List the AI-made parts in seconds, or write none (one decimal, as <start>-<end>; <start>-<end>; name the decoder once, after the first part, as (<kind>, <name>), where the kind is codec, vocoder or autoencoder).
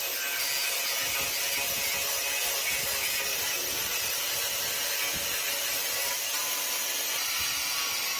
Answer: 3.3-4.6 (vocoder, BigVGAN v2)